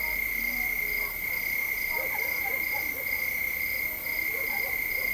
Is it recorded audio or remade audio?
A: recorded